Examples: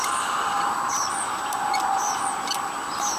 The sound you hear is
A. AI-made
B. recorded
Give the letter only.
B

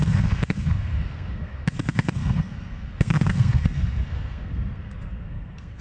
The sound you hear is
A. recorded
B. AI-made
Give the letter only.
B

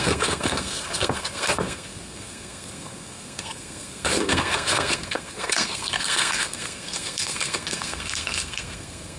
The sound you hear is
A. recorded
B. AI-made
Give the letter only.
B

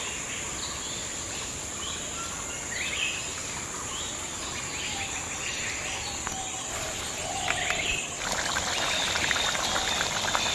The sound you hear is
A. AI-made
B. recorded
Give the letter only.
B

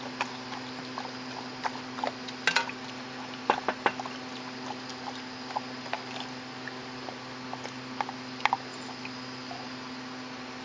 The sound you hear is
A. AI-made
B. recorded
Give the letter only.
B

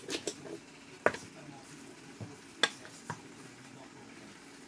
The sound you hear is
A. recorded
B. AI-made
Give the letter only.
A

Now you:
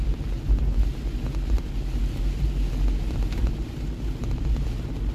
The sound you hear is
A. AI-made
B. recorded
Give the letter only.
B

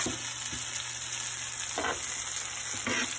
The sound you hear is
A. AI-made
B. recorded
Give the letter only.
B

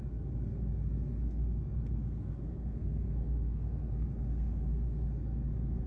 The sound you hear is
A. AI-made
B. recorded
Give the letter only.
A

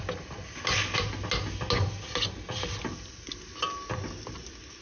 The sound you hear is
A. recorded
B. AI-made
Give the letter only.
A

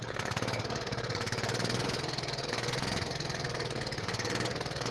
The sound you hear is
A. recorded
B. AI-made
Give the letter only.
B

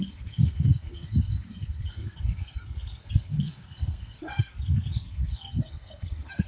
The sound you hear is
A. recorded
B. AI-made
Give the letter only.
B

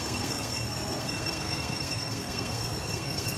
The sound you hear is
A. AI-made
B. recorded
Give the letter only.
A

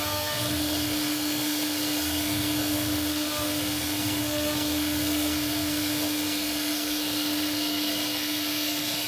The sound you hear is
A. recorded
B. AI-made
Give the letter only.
B